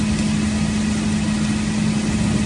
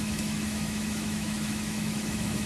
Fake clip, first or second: second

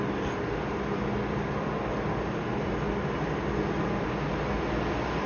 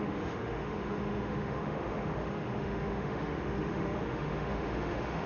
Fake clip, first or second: second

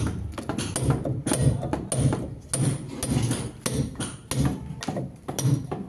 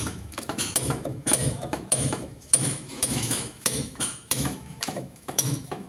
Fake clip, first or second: second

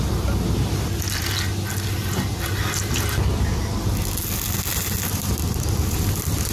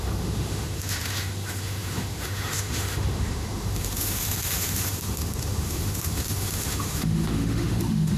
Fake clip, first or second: second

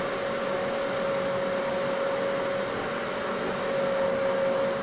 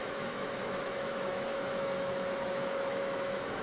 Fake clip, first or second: second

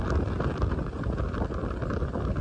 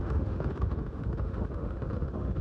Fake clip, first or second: second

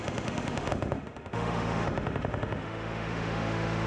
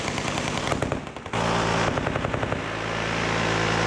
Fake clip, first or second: first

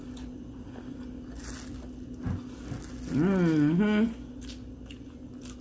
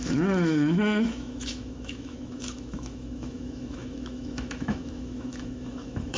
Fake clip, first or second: second